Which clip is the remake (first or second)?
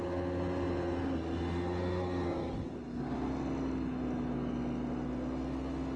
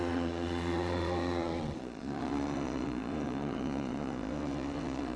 second